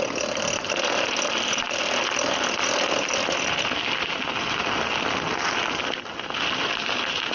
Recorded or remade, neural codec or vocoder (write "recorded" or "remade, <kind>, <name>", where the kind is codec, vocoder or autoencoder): recorded